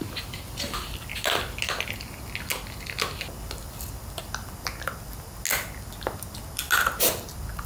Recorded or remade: recorded